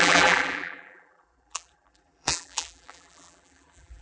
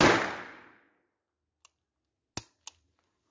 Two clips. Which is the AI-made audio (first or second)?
first